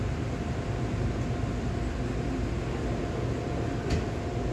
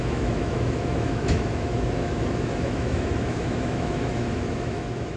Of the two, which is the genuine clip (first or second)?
first